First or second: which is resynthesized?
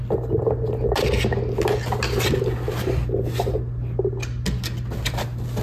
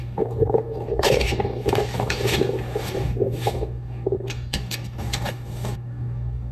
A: second